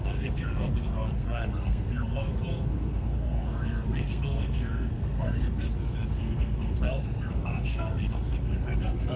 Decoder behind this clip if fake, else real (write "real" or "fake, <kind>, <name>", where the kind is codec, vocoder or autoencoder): fake, codec, SNAC